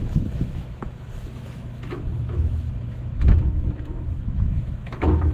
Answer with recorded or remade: remade